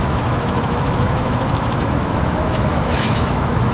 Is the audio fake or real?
fake